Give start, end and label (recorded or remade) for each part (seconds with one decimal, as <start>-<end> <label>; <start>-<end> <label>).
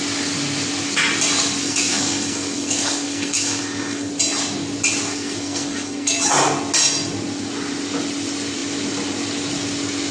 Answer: 0.0-1.6 recorded; 1.6-4.1 remade; 4.1-5.1 recorded; 5.1-6.2 remade; 6.2-10.1 recorded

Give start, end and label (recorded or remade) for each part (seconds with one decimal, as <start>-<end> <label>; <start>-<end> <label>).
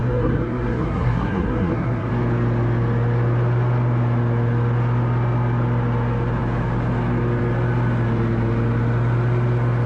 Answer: 0.0-2.1 remade; 2.1-9.9 recorded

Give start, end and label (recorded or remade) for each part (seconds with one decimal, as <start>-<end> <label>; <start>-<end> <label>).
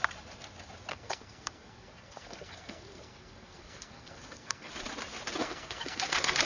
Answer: 0.0-0.9 recorded; 0.9-4.7 remade; 4.7-5.4 recorded; 5.4-6.4 remade